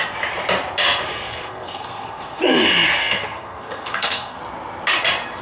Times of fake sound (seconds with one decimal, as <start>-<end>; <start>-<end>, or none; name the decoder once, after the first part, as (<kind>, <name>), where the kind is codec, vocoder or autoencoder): 1.1-2.4 (codec, SNAC); 3.0-4.4